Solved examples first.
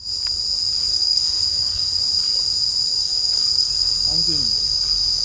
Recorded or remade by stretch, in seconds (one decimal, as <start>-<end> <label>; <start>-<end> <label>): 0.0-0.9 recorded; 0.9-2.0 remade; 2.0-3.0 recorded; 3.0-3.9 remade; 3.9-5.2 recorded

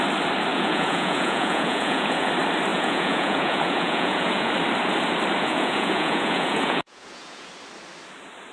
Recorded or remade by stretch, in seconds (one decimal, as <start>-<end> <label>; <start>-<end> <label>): 0.0-0.5 recorded; 0.5-2.3 remade; 2.3-2.7 recorded; 2.7-4.5 remade; 4.5-5.4 recorded; 5.4-7.5 remade; 7.5-8.5 recorded

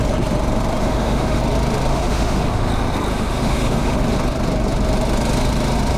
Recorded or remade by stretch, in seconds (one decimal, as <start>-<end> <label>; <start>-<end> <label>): 0.0-0.8 recorded; 0.8-1.4 remade; 1.4-1.9 recorded; 1.9-2.7 remade; 2.7-3.1 recorded; 3.1-4.0 remade; 4.0-6.0 recorded

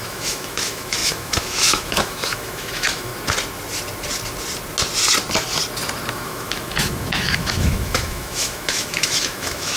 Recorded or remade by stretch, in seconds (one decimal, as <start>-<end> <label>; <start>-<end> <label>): 0.0-3.1 remade; 3.1-6.1 recorded; 6.1-9.8 remade